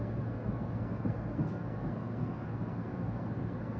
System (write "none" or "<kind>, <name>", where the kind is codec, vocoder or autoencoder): codec, SNAC